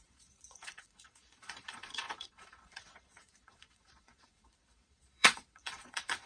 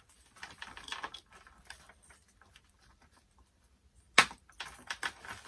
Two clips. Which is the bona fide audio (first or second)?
second